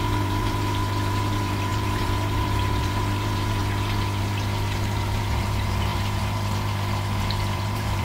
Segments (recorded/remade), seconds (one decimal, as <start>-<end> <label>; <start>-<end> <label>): 0.0-3.6 remade; 3.6-4.2 recorded; 4.2-8.0 remade